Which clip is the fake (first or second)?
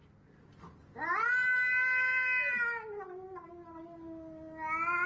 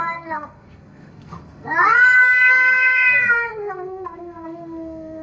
second